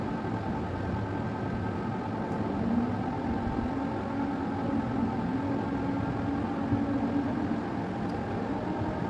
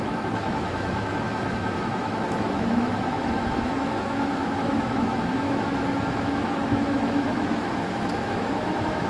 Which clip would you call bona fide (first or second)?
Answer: first